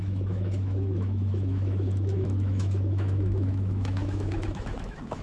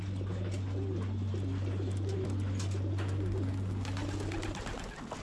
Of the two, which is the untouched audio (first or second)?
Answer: second